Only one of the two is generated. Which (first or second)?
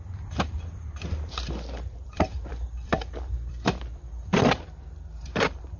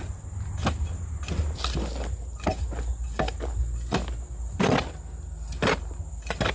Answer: first